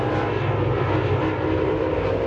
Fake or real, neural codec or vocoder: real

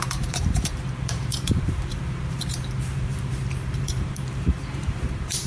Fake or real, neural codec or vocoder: fake, vocoder, BigVGAN v2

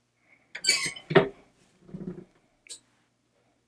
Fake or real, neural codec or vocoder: real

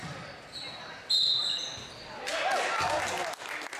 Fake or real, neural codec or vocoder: real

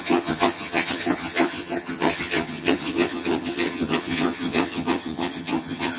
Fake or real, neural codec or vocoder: fake, vocoder, HiFi-GAN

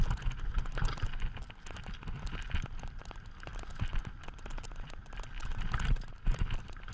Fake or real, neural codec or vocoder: real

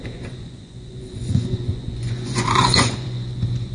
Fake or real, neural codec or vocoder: fake, vocoder, Vocos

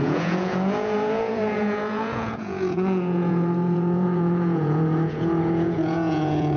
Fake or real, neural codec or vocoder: fake, vocoder, Vocos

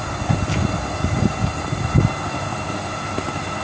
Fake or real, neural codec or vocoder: real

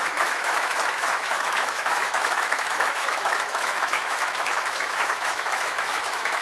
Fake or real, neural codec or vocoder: fake, autoencoder, DAC-VAE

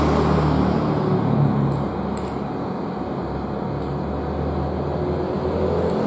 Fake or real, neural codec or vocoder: real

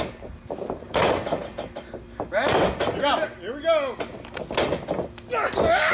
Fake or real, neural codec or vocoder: real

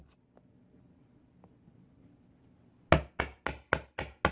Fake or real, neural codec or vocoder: real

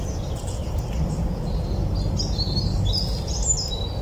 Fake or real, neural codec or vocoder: real